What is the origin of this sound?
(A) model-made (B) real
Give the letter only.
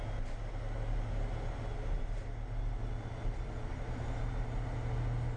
B